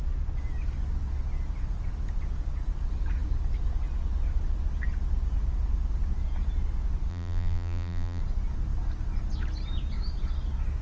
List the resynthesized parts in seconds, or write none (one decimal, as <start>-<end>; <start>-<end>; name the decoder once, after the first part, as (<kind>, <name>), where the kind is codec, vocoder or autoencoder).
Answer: 7.1-8.2 (vocoder, BigVGAN v2)